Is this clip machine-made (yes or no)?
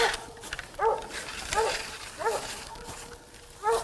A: no